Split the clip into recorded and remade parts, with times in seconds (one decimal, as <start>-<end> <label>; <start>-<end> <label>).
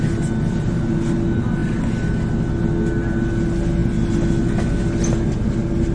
0.0-5.9 recorded